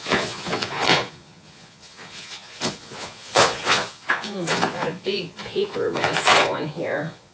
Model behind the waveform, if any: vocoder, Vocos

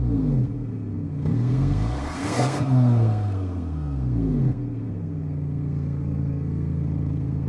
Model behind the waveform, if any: codec, SNAC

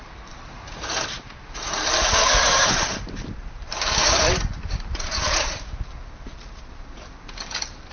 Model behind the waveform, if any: vocoder, BigVGAN v2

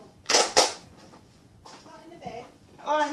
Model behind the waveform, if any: vocoder, Vocos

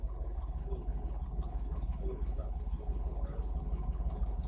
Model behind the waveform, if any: codec, HILCodec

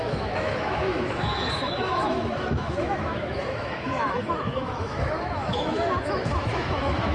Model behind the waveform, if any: autoencoder, DAC-VAE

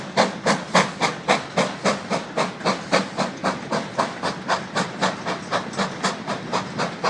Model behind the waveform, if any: none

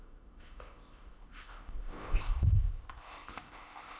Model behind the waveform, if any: codec, ZipCodec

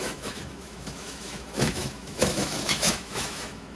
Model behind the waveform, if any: autoencoder, DAC-VAE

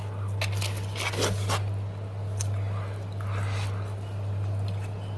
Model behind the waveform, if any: none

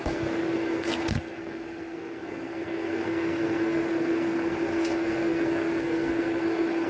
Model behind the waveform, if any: codec, SNAC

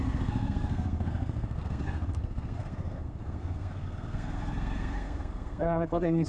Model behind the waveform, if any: codec, SNAC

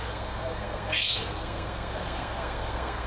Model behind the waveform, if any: codec, SNAC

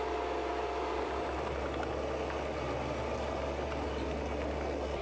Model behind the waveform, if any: none